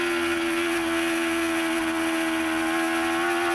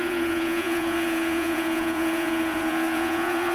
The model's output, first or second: second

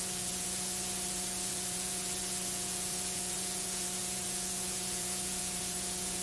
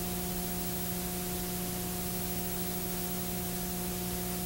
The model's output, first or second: first